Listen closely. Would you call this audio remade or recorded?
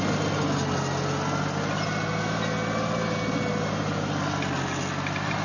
recorded